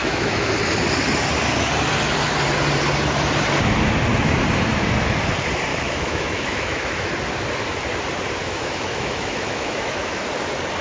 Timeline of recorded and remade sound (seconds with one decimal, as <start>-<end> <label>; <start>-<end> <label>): 0.0-0.5 remade; 0.5-5.7 recorded; 5.7-7.1 remade; 7.1-8.4 recorded; 8.4-10.2 remade; 10.2-10.8 recorded